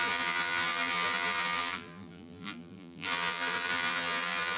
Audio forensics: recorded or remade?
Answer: remade